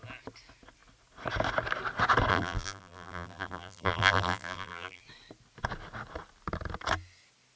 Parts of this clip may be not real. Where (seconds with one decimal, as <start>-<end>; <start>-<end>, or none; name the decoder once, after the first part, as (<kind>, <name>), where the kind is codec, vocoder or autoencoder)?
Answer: 2.3-5.0 (vocoder, BigVGAN v2)